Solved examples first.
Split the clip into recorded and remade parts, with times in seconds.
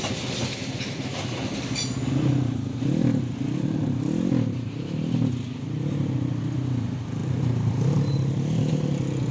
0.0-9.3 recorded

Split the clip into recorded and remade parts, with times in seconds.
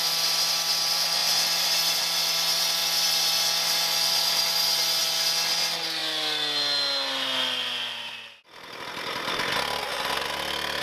0.0-10.8 recorded